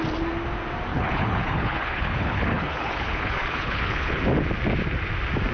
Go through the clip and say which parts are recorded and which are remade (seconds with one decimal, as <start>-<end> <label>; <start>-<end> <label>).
0.0-0.9 recorded; 0.9-4.2 remade; 4.2-5.5 recorded